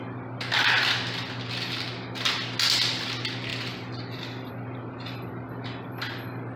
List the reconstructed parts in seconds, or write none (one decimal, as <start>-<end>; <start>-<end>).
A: none